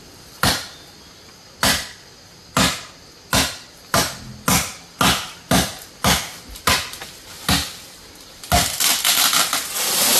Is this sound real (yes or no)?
yes